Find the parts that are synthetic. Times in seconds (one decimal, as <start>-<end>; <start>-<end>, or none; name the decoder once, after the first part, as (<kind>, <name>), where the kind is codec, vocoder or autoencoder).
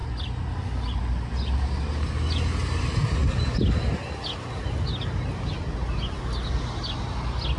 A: none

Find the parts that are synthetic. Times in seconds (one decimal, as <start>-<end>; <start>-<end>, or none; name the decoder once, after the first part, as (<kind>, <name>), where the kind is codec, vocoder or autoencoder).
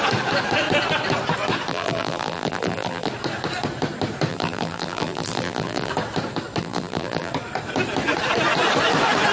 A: 1.7-3.1 (vocoder, BigVGAN v2); 4.3-5.9; 6.6-7.3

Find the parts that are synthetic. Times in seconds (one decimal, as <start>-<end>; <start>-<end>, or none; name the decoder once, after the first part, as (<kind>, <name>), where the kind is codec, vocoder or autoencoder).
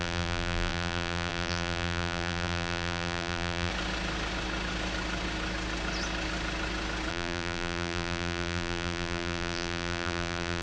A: 0.0-3.7 (vocoder, BigVGAN v2); 7.1-10.6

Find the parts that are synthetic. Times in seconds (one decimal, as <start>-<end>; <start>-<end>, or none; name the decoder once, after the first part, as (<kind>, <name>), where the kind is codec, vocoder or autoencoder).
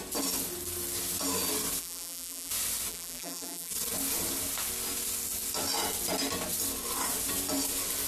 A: 1.8-2.5 (vocoder, BigVGAN v2); 2.9-3.7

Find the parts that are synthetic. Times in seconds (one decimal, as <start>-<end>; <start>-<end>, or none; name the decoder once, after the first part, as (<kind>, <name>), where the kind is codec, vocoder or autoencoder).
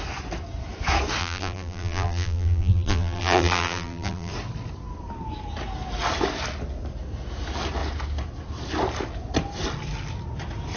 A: 1.2-4.3 (vocoder, BigVGAN v2)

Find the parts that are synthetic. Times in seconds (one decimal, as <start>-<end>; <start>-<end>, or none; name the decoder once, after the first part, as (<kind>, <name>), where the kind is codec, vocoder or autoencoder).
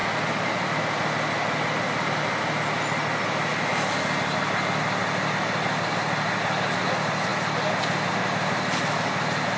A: none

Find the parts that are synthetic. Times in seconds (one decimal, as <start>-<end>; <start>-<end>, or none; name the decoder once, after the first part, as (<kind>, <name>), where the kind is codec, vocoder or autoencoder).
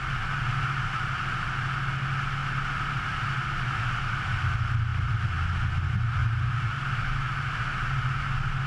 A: 6.2-6.8 (vocoder, BigVGAN v2)